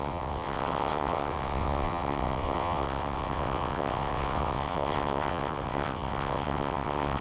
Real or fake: fake